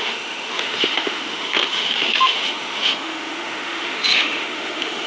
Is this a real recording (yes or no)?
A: no